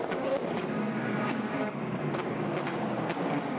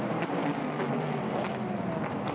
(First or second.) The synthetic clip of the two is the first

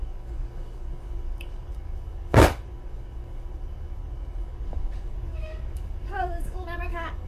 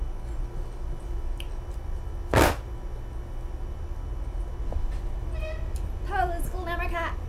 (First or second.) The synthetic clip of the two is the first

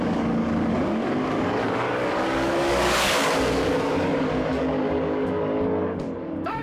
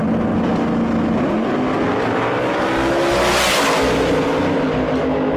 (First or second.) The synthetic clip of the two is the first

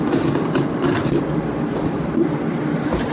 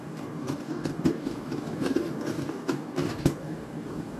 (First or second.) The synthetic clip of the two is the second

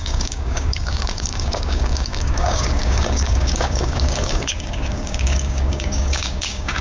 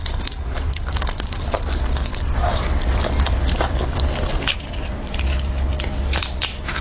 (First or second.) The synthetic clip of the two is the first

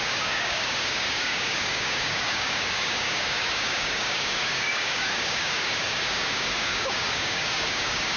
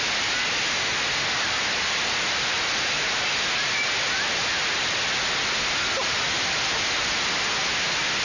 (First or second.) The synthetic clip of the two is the first